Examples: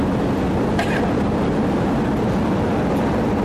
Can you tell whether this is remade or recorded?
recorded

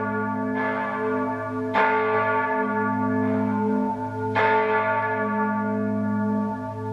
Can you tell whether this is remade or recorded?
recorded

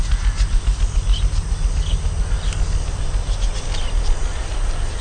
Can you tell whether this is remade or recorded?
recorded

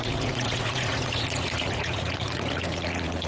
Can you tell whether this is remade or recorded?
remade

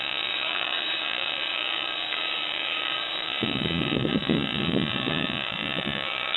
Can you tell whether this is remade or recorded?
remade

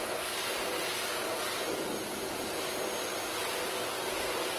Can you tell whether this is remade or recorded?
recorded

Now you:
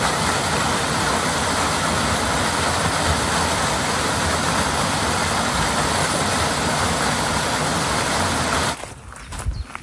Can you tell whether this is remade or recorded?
recorded